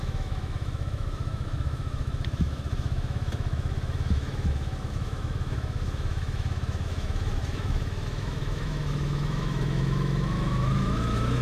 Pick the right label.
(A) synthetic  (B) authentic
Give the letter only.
A